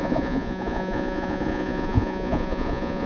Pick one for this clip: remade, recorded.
remade